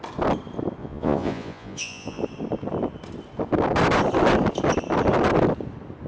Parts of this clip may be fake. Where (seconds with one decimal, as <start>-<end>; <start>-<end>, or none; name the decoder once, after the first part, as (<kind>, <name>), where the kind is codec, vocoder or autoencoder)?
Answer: 0.8-2.2 (vocoder, Vocos)